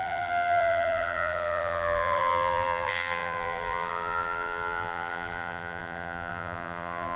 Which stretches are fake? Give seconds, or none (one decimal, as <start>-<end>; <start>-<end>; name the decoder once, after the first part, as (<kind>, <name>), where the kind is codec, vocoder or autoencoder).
0.0-7.2 (vocoder, BigVGAN v2)